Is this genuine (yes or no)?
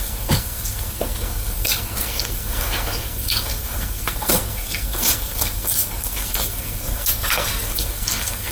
no